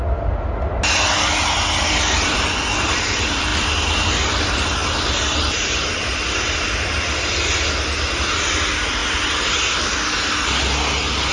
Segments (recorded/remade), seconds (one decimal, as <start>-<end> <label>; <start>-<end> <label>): 0.0-11.3 recorded